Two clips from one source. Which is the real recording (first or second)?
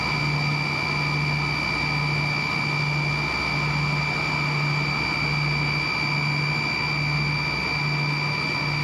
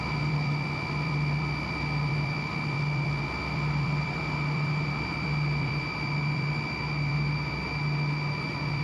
first